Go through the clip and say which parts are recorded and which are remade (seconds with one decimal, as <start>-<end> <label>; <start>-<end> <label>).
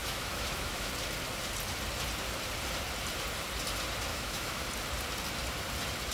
0.0-0.9 remade; 0.9-4.1 recorded; 4.1-4.6 remade; 4.6-6.1 recorded